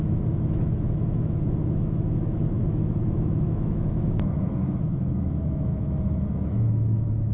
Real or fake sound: fake